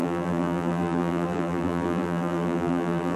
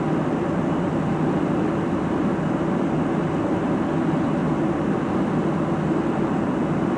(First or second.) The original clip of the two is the second